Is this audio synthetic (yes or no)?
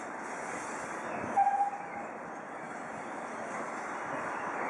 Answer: no